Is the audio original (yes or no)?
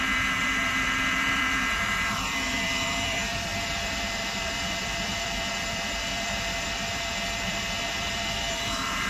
no